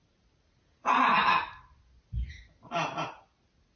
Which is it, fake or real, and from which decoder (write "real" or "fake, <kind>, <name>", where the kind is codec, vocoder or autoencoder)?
real